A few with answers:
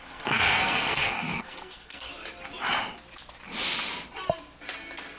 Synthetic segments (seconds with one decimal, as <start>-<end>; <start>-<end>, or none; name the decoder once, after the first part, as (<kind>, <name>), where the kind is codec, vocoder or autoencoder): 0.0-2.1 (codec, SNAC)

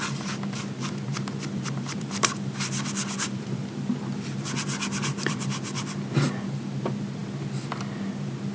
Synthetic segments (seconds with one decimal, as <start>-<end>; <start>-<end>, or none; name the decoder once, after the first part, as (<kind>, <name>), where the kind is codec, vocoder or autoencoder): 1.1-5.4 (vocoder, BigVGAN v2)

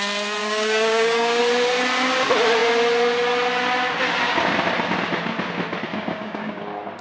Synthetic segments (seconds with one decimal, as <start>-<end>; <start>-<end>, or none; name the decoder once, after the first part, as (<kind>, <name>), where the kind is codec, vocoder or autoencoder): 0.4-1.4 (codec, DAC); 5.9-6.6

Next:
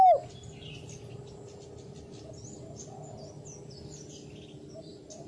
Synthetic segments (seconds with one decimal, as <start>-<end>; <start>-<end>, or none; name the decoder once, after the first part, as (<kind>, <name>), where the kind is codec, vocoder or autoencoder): none